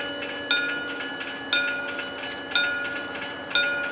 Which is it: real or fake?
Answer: real